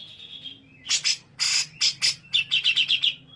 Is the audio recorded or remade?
recorded